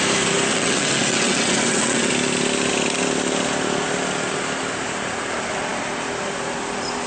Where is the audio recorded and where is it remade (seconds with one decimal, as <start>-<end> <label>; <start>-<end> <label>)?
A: 0.0-0.5 recorded; 0.5-2.1 remade; 2.1-7.1 recorded